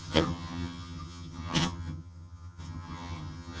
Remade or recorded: remade